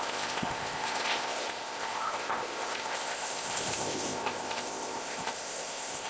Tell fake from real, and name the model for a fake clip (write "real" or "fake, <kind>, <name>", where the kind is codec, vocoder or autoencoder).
fake, codec, ZipCodec